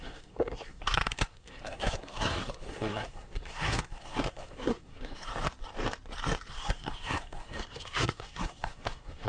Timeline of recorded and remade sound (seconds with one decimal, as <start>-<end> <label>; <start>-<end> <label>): 0.0-5.3 remade; 5.3-6.5 recorded; 6.5-9.3 remade